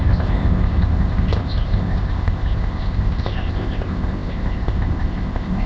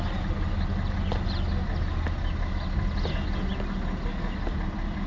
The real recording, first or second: second